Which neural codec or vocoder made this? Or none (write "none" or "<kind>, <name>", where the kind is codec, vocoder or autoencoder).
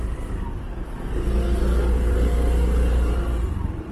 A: none